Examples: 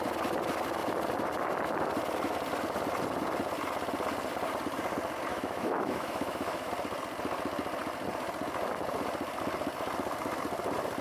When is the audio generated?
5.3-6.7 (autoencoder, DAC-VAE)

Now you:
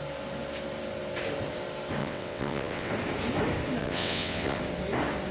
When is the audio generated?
2.0-2.9 (vocoder, WaveNeXt); 3.8-4.6

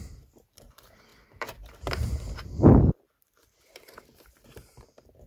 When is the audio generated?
0.0-5.3 (vocoder, BigVGAN v2)

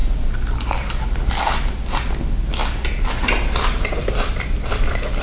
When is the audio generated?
3.1-5.2 (vocoder, BigVGAN v2)

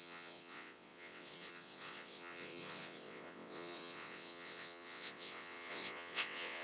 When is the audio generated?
0.0-6.6 (vocoder, WaveNeXt)

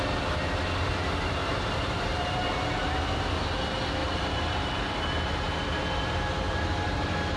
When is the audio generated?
1.4-3.3 (vocoder, BigVGAN v2); 4.0-4.9

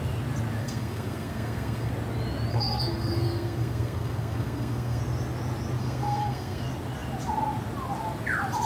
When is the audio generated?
0.6-1.9 (codec, SNAC); 2.5-5.0; 5.8-6.6

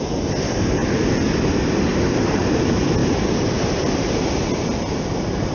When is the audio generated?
1.9-2.4 (vocoder, BigVGAN v2); 3.0-4.2